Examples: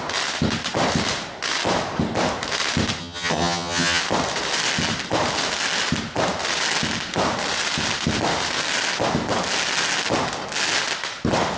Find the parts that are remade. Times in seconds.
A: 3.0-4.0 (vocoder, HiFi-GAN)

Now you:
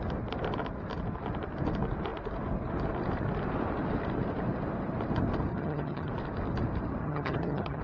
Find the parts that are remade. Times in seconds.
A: 5.5-6.1 (vocoder, HiFi-GAN); 7.0-7.8

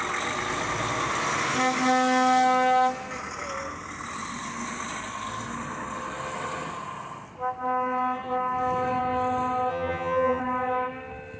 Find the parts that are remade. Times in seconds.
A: 9.7-10.4 (vocoder, HiFi-GAN)